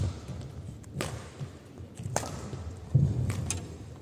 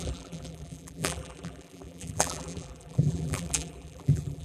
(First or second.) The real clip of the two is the first